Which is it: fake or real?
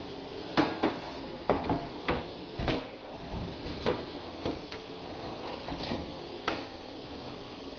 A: fake